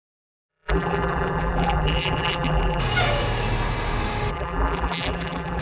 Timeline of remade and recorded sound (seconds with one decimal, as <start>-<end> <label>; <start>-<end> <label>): 0.0-0.5 recorded; 0.5-2.8 remade; 2.8-4.3 recorded; 4.3-5.6 remade